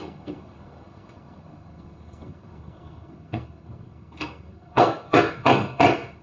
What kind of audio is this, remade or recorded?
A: remade